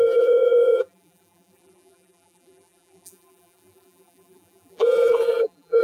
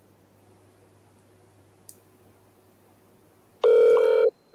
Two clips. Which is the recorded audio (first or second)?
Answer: second